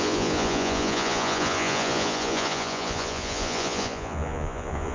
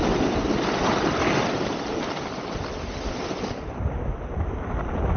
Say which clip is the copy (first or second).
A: first